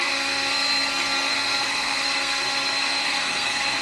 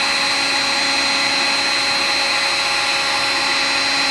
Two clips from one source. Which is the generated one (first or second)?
first